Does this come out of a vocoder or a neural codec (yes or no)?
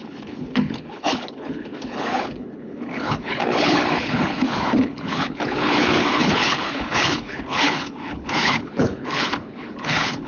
yes